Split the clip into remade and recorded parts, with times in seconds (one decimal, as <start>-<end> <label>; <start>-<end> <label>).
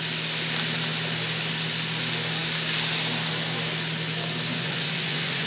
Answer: 0.0-4.5 recorded; 4.5-5.5 remade